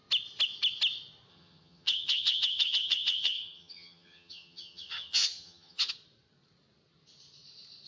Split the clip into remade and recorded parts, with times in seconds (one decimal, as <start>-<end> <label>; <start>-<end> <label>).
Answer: 0.0-1.3 recorded; 1.3-5.9 remade; 5.9-7.9 recorded